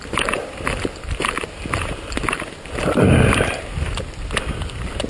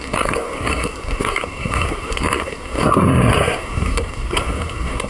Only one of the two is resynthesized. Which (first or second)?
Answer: second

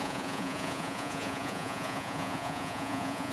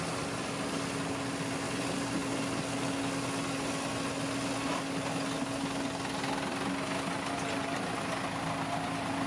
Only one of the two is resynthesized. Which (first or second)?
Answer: first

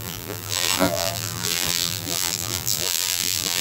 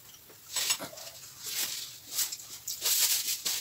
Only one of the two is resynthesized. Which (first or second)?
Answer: first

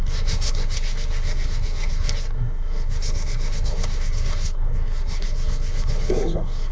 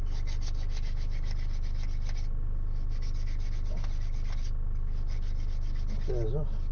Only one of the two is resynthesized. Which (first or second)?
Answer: first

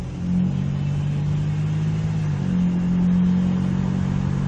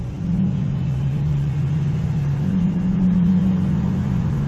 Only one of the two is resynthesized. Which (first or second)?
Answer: second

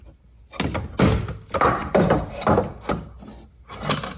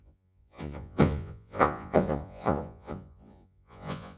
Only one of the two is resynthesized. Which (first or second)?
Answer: second